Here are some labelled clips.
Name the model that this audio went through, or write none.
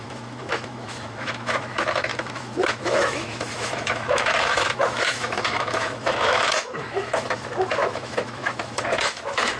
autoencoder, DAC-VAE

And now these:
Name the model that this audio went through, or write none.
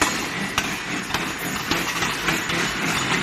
none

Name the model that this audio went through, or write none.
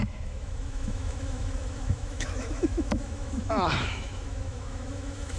autoencoder, DAC-VAE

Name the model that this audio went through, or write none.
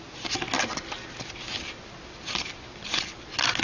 none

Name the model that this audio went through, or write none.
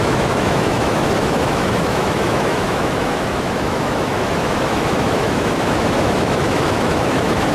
autoencoder, DAC-VAE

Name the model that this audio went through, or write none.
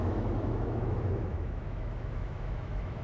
autoencoder, DAC-VAE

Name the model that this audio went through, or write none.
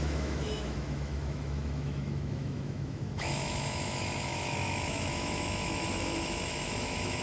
autoencoder, DAC-VAE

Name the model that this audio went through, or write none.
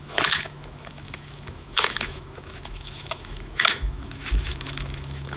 autoencoder, DAC-VAE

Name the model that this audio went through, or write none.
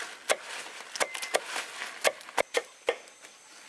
none